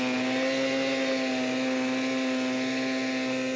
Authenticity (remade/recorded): recorded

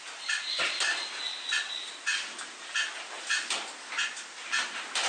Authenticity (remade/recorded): recorded